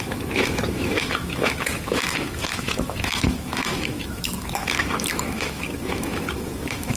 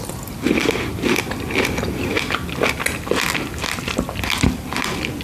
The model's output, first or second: first